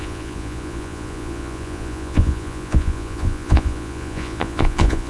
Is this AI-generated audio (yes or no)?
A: yes